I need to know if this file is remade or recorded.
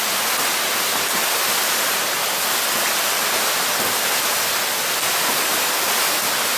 recorded